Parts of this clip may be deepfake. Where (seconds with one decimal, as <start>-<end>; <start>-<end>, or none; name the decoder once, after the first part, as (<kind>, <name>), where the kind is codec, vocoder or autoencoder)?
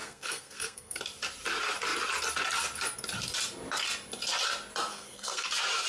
0.0-1.0 (codec, SNAC); 4.9-5.5